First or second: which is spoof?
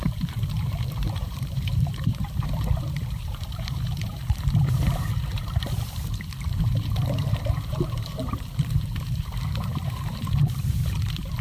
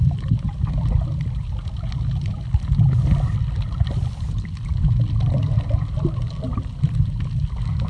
first